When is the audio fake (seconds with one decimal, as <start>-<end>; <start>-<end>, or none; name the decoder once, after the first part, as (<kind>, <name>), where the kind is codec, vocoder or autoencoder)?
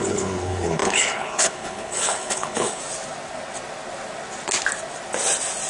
0.0-2.8 (codec, HILCodec)